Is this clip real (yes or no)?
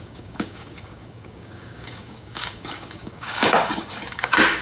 no